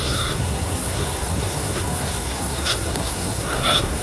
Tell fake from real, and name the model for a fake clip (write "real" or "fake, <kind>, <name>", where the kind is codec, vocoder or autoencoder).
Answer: fake, codec, SNAC